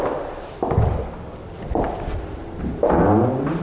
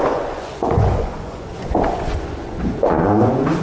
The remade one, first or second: second